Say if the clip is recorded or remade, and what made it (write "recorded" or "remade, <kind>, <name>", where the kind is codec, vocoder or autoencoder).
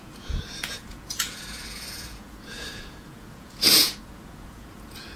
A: remade, vocoder, Vocos